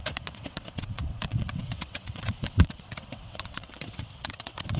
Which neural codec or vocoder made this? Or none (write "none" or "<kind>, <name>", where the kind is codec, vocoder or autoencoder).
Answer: vocoder, WaveNeXt